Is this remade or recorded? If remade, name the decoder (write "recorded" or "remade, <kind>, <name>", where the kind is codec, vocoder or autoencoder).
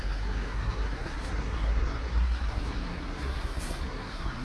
remade, codec, SNAC